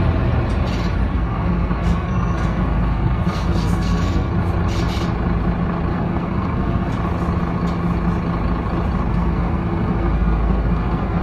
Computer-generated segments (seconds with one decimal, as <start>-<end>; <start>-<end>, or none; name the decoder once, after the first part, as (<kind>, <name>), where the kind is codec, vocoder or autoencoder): 1.1-4.3 (codec, SNAC); 5.9-6.9; 9.1-11.2